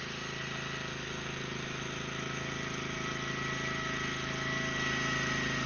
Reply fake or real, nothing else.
real